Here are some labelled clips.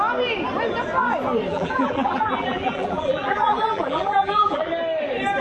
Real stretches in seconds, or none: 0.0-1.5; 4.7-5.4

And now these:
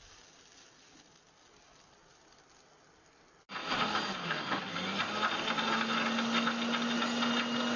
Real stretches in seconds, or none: 0.0-3.6; 4.6-7.8

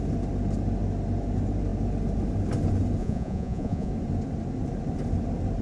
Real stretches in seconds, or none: 0.0-3.0; 3.9-5.6

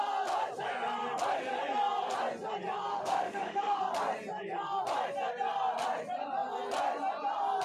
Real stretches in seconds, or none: 0.0-2.9; 3.8-7.6

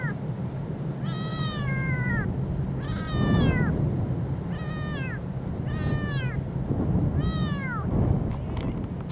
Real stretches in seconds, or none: 0.0-1.3; 2.1-9.1